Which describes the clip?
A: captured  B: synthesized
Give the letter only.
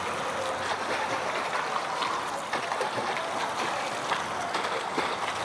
A